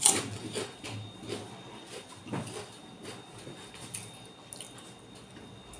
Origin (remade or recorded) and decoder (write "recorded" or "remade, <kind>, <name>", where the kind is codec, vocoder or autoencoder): recorded